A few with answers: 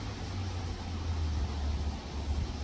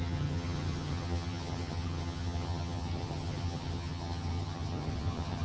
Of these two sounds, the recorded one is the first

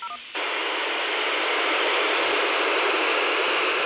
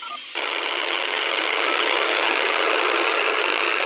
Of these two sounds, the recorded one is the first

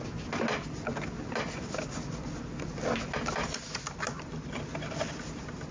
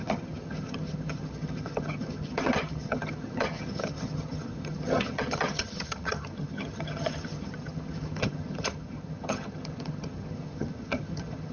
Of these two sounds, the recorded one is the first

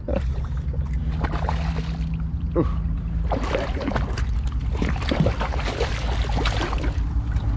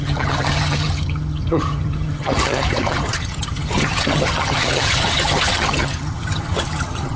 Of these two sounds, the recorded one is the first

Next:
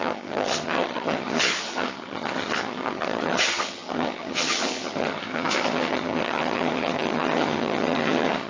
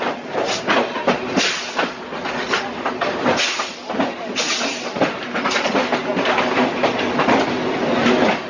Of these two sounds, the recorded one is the second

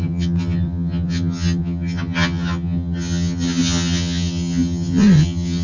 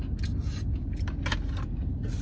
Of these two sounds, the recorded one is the second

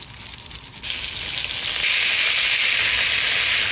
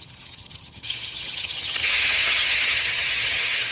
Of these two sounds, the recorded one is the first